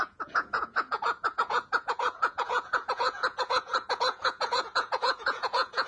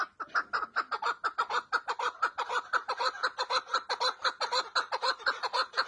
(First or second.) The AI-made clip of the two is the first